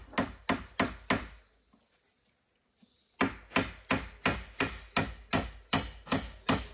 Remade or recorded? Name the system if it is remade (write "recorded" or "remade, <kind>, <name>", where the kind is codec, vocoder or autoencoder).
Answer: recorded